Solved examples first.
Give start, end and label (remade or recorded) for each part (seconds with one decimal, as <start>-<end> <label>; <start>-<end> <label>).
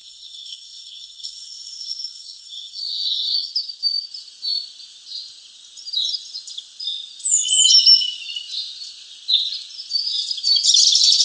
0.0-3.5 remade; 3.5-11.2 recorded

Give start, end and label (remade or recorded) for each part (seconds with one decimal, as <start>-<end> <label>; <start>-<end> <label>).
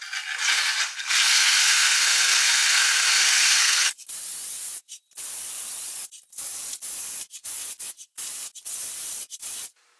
0.0-0.9 recorded; 0.9-4.1 remade; 4.1-10.0 recorded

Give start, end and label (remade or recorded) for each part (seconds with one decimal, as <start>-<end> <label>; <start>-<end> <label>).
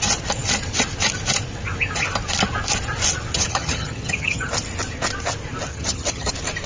0.0-3.3 recorded; 3.3-4.5 remade; 4.5-5.7 recorded; 5.7-6.3 remade; 6.3-6.7 recorded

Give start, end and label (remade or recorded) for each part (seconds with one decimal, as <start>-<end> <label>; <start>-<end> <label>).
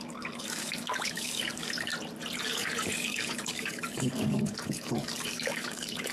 0.0-1.9 remade; 1.9-2.4 recorded; 2.4-6.1 remade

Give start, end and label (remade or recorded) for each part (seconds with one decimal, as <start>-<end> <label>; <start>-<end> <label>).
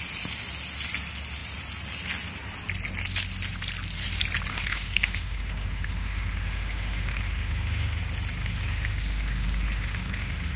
0.0-4.5 recorded; 4.5-8.0 remade; 8.0-8.4 recorded; 8.4-10.6 remade